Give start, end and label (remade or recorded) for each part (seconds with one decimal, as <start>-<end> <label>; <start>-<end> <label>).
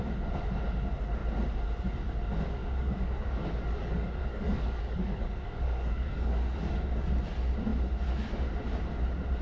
0.0-2.6 recorded; 2.6-7.1 remade; 7.1-9.4 recorded